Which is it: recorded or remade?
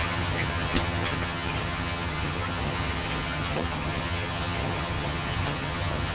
remade